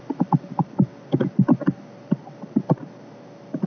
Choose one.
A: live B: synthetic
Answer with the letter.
A